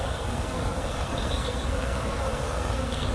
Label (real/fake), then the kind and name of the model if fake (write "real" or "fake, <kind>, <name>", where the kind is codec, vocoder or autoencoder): fake, codec, SNAC